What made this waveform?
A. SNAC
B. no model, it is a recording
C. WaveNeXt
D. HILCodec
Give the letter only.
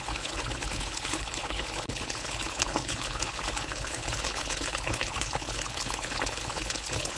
D